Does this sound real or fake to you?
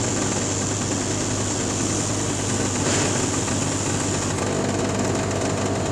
real